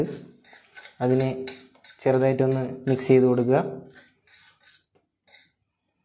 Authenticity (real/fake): real